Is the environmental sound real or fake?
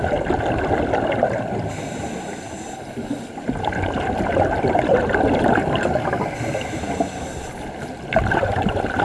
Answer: real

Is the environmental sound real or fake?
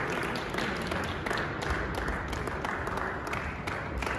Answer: real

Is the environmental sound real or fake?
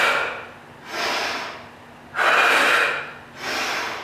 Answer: real